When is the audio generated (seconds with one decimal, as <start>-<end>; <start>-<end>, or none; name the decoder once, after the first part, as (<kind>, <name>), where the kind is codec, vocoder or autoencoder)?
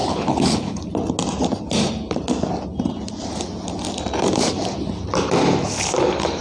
0.0-0.8 (codec, HILCodec)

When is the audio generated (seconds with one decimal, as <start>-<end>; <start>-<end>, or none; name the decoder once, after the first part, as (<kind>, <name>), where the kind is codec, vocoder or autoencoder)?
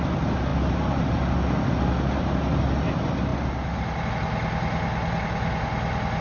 none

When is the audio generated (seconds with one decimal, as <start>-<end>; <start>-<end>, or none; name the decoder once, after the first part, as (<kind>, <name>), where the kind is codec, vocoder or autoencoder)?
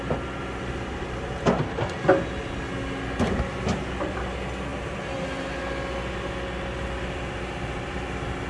none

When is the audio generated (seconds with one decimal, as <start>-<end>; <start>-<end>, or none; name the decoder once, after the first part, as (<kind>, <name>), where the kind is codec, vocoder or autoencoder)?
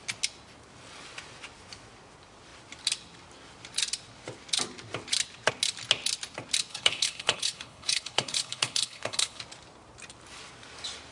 6.7-9.4 (codec, HILCodec)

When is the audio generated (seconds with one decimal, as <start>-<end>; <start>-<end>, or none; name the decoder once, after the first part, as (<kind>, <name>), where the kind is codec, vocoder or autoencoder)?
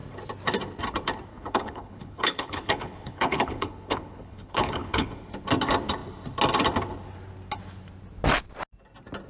1.3-5.1 (codec, HILCodec)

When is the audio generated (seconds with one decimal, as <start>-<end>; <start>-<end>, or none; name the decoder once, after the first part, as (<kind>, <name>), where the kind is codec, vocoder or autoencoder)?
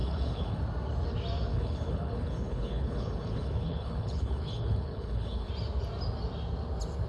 0.0-0.6 (codec, HILCodec); 1.5-5.5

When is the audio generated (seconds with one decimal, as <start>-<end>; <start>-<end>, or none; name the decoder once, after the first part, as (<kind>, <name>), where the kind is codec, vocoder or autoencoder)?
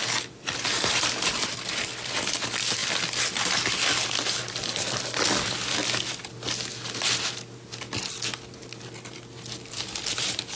none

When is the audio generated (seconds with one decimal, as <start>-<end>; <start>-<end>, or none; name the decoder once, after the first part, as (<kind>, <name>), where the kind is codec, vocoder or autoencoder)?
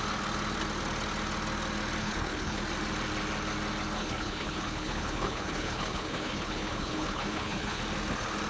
2.0-2.6 (codec, HILCodec); 4.0-7.8